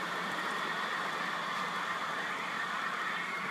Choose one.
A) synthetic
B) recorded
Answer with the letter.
B